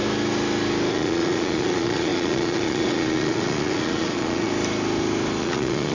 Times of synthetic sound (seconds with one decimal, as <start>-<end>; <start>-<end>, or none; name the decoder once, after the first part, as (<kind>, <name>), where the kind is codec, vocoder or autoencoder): 0.9-4.5 (vocoder, Vocos); 5.4-5.9